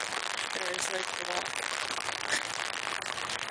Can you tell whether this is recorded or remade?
recorded